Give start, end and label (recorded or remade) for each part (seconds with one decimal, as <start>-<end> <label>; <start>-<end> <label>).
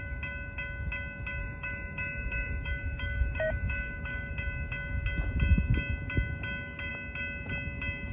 0.0-1.4 recorded; 1.4-4.3 remade; 4.3-8.1 recorded